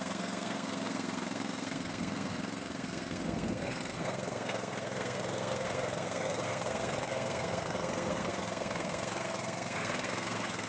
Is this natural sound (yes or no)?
no